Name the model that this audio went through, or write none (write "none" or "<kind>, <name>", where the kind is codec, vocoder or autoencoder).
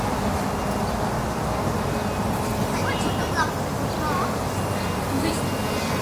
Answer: none